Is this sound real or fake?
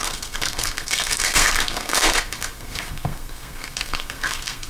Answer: fake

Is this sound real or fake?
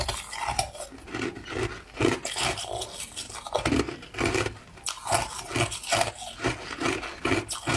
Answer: real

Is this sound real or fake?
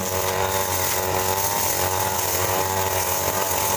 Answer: real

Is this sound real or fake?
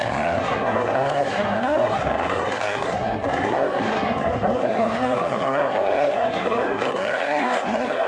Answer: fake